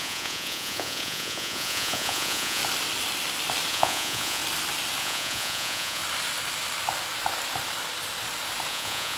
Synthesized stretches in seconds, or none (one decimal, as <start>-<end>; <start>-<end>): 0.0-2.6; 3.7-4.4; 5.0-6.0; 8.7-9.2